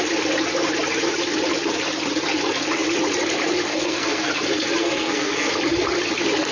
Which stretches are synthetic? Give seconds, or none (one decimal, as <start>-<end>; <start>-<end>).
3.7-4.3; 4.8-5.5